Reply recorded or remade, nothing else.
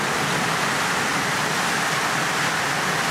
recorded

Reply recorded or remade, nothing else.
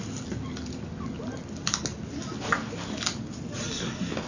recorded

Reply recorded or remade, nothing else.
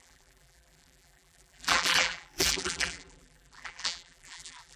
remade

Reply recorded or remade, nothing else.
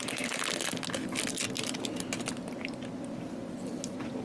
recorded